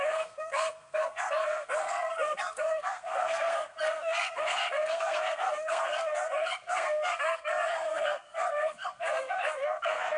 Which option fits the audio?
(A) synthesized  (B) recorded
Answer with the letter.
A